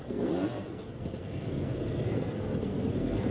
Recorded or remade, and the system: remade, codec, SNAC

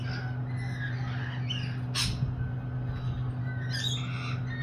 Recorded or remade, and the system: recorded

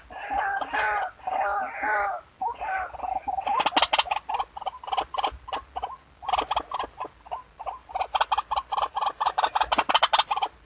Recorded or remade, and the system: recorded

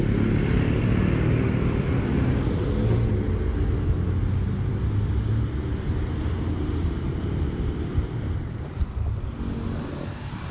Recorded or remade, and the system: recorded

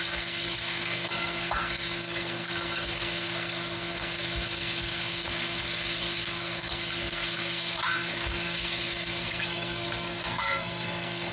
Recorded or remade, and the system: remade, codec, SNAC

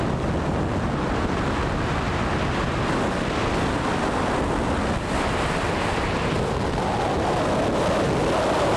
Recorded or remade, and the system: recorded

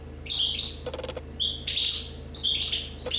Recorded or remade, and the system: recorded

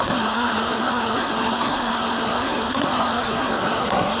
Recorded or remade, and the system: remade, codec, SNAC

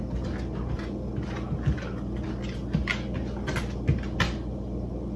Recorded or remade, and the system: recorded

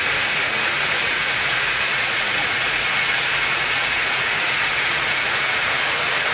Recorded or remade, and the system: remade, vocoder, Vocos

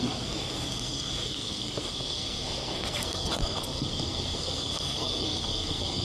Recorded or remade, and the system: remade, codec, SNAC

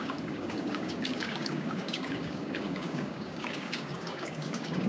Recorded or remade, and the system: remade, codec, DAC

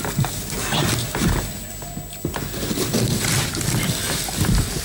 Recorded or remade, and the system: recorded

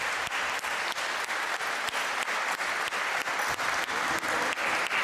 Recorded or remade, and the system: recorded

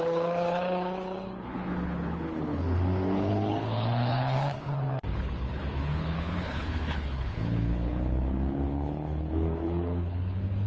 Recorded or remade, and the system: remade, codec, HILCodec